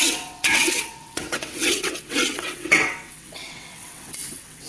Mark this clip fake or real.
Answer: fake